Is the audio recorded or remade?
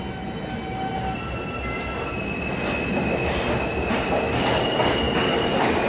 recorded